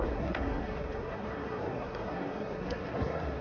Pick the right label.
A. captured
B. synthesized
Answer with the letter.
B